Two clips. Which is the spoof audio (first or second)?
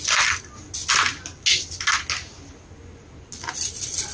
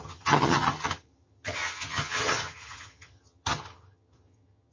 second